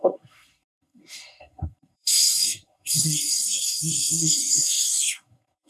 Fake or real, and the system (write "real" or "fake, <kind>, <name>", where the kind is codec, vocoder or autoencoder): fake, codec, SNAC